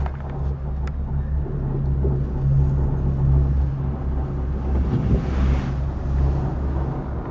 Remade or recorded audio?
recorded